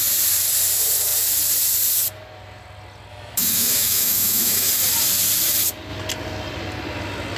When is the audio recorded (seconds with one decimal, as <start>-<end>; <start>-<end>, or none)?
0.0-3.1; 4.7-7.4